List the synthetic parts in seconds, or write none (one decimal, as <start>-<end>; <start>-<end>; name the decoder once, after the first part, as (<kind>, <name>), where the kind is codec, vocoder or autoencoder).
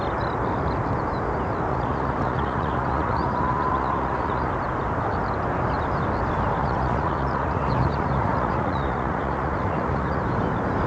1.7-4.5 (vocoder, Vocos); 6.6-10.2